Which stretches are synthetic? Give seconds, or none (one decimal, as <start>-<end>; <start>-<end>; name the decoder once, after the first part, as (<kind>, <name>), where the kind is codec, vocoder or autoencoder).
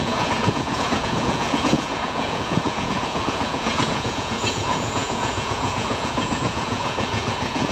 0.0-7.7 (vocoder, Vocos)